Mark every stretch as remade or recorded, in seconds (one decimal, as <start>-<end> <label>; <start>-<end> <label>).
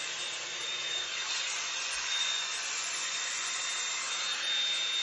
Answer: 0.0-0.6 recorded; 0.6-3.6 remade; 3.6-5.0 recorded